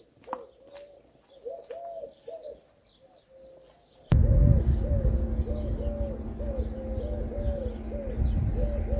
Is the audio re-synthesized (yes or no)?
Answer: no